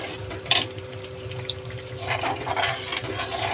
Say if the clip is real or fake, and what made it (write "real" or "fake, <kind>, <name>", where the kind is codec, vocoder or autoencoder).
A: fake, vocoder, BigVGAN v2